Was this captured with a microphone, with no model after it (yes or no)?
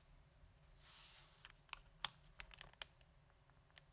yes